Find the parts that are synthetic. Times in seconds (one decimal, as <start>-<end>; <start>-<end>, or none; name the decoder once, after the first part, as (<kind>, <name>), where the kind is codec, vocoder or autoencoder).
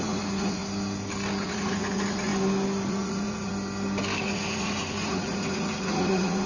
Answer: 0.0-0.6 (vocoder, Vocos); 1.4-2.3; 2.9-3.5; 4.2-6.5